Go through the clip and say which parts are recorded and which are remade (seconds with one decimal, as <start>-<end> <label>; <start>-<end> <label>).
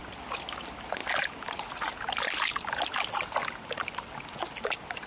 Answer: 0.0-5.1 recorded